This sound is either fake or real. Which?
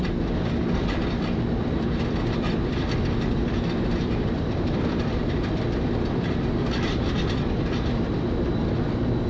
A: fake